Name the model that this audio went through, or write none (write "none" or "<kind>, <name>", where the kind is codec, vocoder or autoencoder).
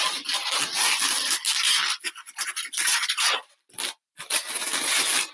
none